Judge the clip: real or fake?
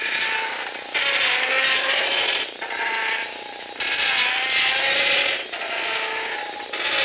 real